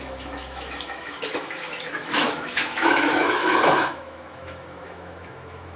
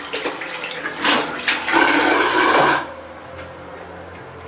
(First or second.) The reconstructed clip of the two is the first